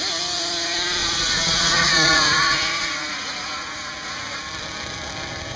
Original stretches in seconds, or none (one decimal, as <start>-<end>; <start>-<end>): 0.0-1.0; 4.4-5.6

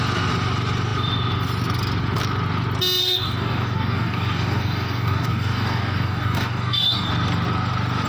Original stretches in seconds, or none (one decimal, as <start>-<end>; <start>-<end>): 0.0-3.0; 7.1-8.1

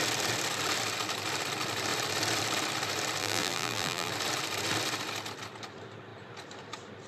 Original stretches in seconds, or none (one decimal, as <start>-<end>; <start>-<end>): 0.0-3.2; 4.1-7.1